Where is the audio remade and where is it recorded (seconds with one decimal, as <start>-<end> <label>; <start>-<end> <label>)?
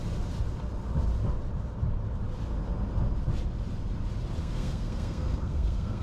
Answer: 0.0-4.4 recorded; 4.4-6.0 remade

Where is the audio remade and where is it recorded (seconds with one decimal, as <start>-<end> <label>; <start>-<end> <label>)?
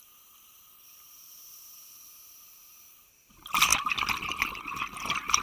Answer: 0.0-3.7 remade; 3.7-4.6 recorded; 4.6-5.4 remade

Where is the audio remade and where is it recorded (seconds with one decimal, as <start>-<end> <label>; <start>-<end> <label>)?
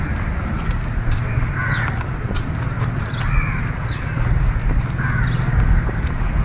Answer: 0.0-6.4 recorded